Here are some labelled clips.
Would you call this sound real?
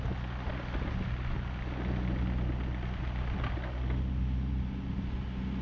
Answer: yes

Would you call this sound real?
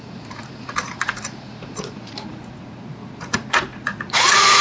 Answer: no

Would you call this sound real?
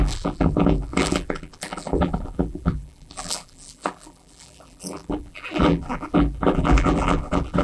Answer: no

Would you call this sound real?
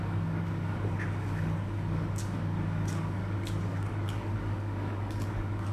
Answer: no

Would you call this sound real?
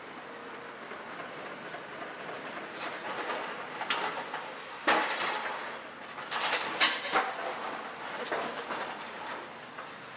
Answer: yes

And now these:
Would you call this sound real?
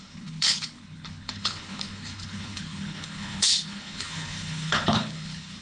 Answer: no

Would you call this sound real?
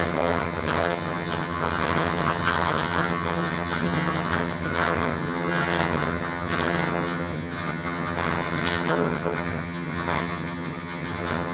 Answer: no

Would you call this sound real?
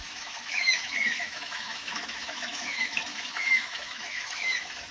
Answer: no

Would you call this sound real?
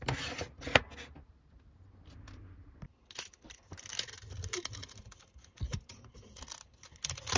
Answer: yes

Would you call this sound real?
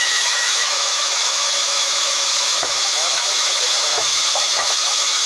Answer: no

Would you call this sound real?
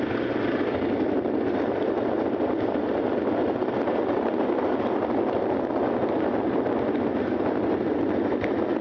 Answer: yes